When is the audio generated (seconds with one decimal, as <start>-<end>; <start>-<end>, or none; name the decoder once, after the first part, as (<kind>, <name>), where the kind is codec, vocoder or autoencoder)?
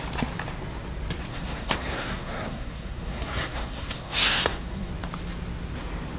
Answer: 1.3-4.9 (codec, SNAC)